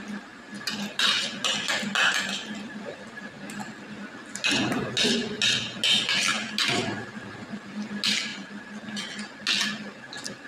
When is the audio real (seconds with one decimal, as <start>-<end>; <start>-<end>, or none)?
0.0-10.5